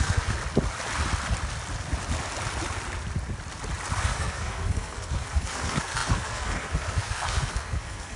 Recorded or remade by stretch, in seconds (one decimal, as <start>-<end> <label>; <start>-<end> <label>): 0.0-0.4 remade; 0.4-4.0 recorded; 4.0-8.2 remade